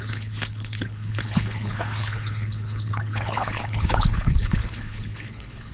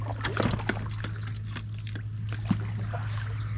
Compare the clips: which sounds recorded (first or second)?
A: second